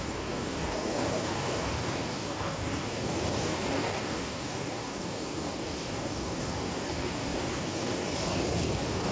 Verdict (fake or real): fake